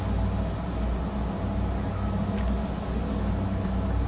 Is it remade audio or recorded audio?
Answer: recorded